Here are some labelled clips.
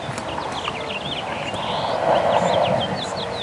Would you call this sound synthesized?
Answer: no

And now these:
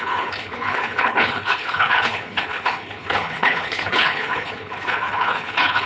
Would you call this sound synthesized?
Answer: yes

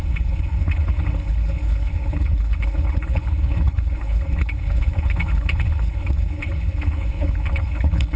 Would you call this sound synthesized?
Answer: yes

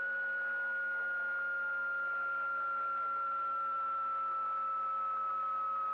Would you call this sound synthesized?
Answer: no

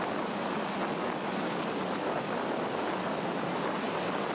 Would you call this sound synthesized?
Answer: no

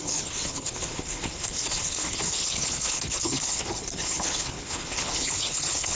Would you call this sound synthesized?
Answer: yes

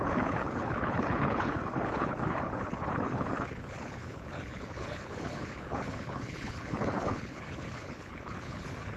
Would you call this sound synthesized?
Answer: yes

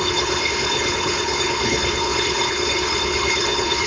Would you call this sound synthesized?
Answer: yes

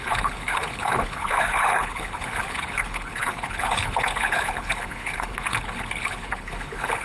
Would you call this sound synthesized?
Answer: yes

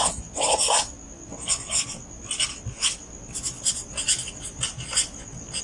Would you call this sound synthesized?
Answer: no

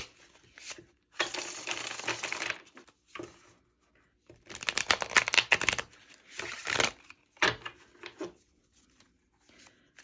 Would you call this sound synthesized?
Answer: no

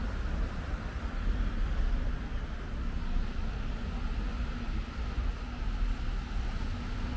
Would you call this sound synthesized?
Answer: no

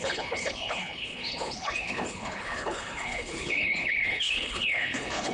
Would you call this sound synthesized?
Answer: yes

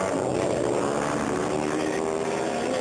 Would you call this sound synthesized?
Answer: no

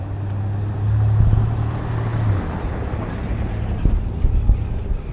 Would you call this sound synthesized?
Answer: no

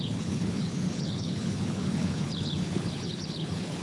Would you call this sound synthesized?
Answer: yes